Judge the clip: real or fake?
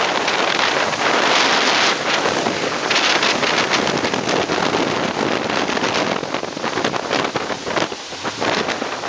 real